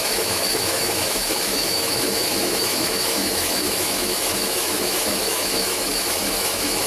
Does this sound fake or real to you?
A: fake